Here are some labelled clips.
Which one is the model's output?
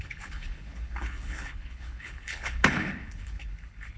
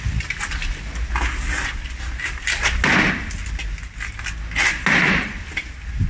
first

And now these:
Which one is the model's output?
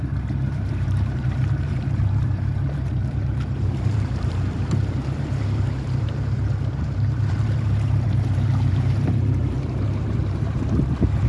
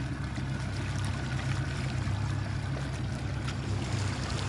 first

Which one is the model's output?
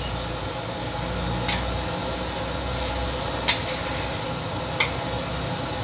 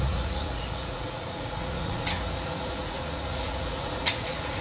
second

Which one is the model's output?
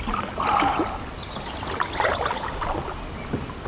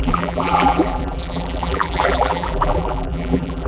second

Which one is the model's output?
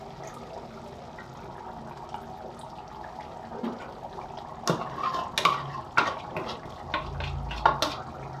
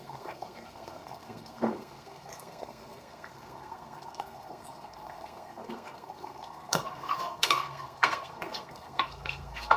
second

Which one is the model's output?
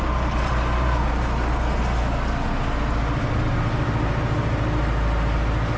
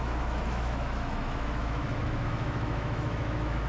second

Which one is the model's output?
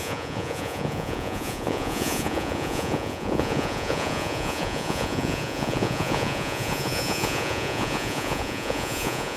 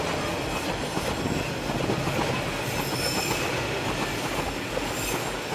first